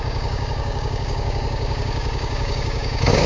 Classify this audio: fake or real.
fake